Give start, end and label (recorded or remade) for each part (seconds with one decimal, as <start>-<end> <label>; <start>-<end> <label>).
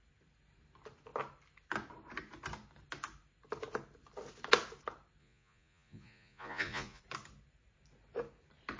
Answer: 0.0-5.2 recorded; 5.2-7.0 remade; 7.0-8.8 recorded